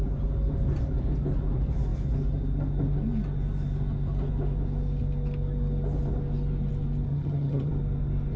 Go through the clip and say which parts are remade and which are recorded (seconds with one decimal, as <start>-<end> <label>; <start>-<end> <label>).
0.0-7.1 recorded; 7.1-7.7 remade; 7.7-8.4 recorded